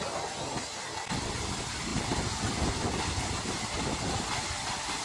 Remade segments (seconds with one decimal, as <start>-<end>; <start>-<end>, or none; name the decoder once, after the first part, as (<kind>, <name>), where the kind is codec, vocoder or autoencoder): none